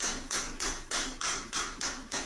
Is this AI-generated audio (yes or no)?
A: yes